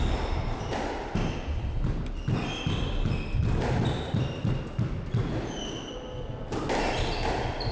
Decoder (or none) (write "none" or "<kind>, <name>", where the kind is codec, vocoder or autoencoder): none